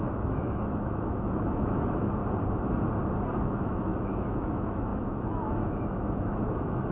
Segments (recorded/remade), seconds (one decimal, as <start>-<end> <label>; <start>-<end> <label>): 0.0-2.2 remade; 2.2-3.4 recorded; 3.4-6.9 remade